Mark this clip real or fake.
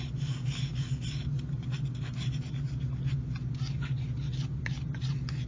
real